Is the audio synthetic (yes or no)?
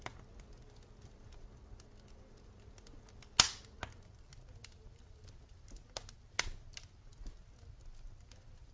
no